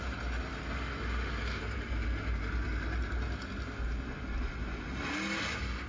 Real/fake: real